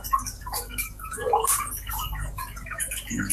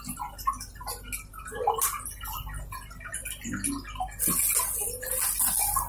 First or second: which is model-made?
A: first